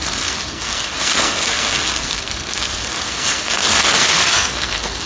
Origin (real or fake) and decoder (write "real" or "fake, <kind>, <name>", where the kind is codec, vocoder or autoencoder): fake, codec, SNAC